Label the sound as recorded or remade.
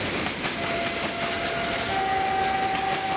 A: recorded